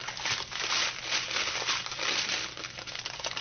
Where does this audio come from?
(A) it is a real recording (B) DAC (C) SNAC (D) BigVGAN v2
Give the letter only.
A